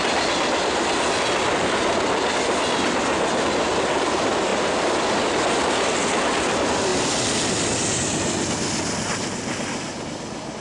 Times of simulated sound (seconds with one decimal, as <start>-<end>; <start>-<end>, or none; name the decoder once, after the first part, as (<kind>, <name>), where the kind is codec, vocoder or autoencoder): none